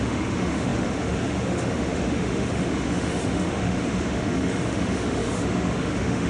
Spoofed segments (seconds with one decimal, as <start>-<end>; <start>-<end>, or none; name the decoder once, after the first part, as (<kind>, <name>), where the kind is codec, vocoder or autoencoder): 0.0-6.3 (autoencoder, DAC-VAE)